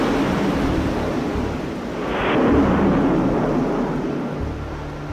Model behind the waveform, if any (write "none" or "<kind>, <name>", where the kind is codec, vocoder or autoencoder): none